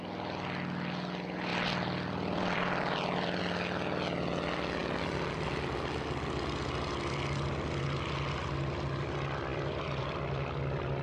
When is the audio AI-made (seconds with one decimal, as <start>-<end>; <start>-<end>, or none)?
1.5-3.4; 9.5-10.0